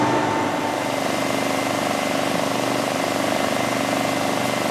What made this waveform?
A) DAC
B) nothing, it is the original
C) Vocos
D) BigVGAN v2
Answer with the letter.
B